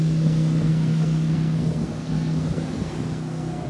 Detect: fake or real fake